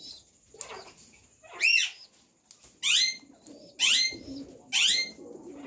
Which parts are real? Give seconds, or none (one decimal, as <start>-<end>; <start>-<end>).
0.0-5.7